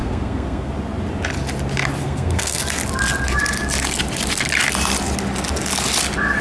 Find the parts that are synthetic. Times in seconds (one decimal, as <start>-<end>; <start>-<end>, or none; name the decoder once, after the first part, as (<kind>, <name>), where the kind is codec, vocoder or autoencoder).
0.0-0.7 (codec, SNAC); 2.0-2.6